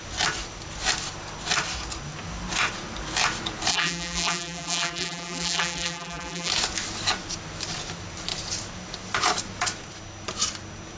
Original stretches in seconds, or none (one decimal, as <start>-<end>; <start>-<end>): 0.0-3.7; 6.5-11.0